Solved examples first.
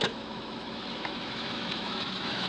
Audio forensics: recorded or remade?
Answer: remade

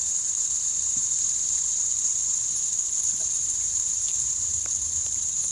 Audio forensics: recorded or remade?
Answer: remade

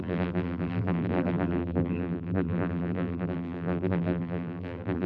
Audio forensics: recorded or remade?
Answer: remade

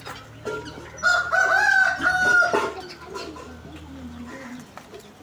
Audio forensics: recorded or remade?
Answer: recorded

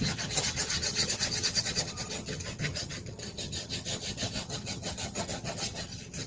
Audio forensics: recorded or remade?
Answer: remade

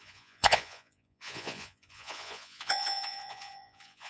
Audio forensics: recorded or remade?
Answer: remade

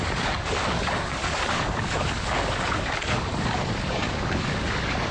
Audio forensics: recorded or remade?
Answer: remade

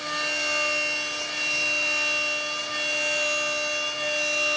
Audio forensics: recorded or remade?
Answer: recorded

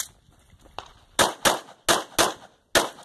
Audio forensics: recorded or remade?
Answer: recorded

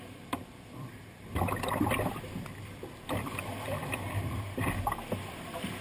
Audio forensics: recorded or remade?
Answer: remade